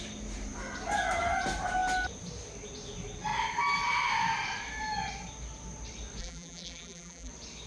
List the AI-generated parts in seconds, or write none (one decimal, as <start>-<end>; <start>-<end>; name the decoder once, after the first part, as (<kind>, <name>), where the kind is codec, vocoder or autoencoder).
6.2-7.3 (vocoder, BigVGAN v2)